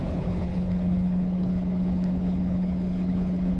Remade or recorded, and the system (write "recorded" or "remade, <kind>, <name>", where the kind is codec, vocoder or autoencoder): remade, codec, HILCodec